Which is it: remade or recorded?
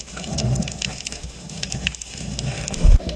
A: remade